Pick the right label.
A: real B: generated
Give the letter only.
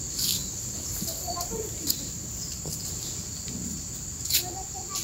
B